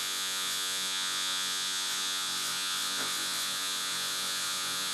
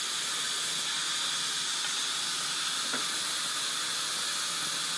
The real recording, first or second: second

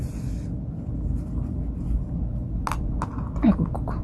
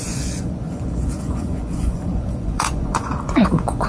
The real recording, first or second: first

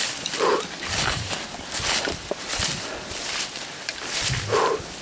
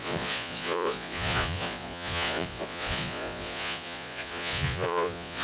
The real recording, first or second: first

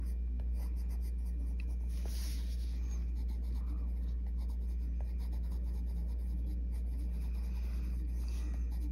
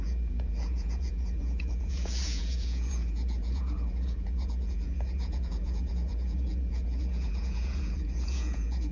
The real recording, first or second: first